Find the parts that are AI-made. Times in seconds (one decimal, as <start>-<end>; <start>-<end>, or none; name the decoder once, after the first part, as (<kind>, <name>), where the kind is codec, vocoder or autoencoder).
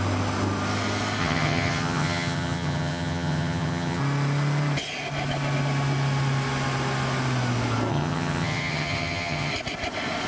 1.2-4.0 (vocoder, HiFi-GAN); 7.9-9.5